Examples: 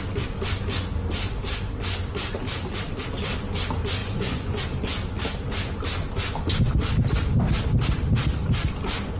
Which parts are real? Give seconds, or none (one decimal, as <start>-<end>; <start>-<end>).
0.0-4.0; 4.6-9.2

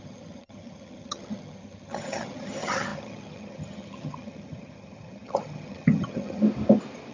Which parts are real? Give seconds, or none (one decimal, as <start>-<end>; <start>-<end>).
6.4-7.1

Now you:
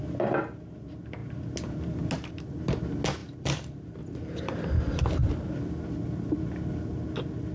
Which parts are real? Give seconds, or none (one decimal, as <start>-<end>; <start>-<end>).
0.0-3.2; 4.7-7.5

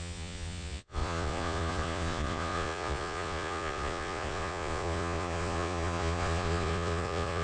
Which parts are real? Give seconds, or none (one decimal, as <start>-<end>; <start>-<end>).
none

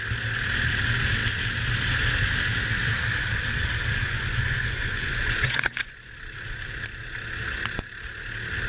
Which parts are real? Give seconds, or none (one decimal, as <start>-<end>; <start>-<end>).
0.0-4.0; 6.1-8.7